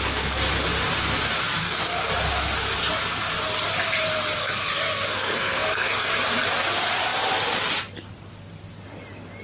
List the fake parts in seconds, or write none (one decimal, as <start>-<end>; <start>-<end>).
1.6-2.1; 4.4-6.1